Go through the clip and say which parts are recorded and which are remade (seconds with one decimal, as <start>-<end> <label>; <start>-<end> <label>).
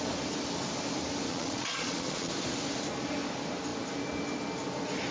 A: 0.0-1.3 recorded; 1.3-2.3 remade; 2.3-5.1 recorded